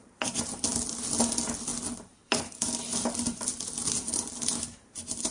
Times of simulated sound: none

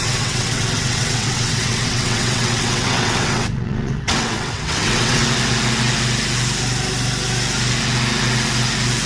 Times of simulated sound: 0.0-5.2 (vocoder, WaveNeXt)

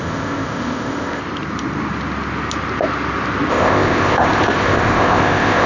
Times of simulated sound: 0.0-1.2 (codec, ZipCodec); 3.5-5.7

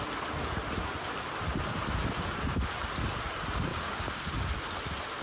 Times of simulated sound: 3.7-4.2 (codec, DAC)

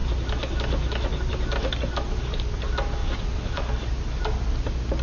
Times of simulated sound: 3.0-3.6 (vocoder, Vocos)

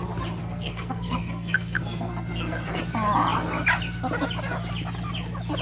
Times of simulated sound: 0.4-2.8 (codec, SNAC)

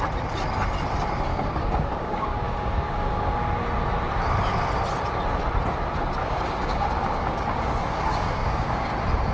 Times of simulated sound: 1.3-3.3 (codec, DAC); 6.2-8.9